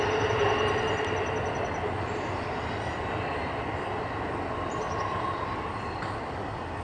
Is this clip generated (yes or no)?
no